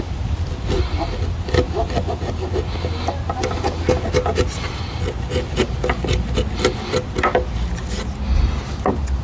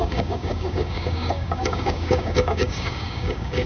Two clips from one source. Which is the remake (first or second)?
second